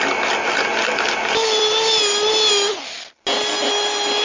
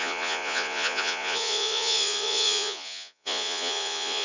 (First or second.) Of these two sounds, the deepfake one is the second